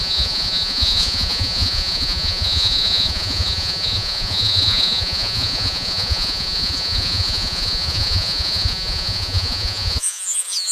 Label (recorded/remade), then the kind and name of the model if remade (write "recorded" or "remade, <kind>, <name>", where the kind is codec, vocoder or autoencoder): remade, vocoder, Vocos